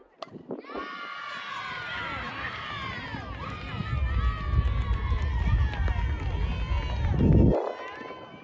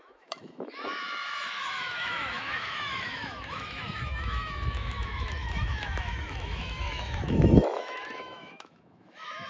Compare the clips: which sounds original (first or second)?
first